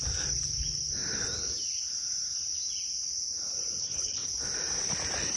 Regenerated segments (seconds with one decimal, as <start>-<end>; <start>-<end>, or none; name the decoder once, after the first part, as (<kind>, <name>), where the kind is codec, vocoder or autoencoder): 3.8-4.3 (codec, HILCodec)